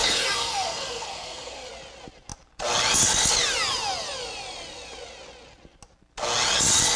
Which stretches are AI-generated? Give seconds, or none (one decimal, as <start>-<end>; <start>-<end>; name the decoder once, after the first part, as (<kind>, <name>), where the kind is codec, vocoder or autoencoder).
0.0-1.7 (codec, SNAC)